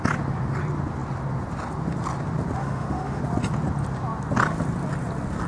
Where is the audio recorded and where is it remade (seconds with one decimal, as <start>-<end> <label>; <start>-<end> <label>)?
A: 0.0-2.6 recorded; 2.6-3.2 remade; 3.2-5.5 recorded